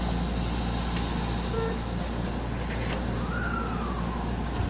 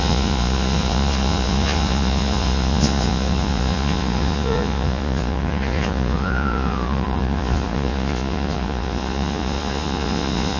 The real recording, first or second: first